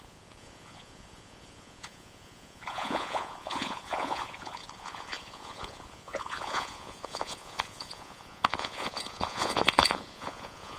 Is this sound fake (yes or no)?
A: yes